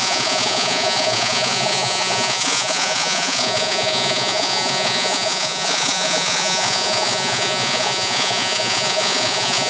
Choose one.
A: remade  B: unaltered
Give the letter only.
A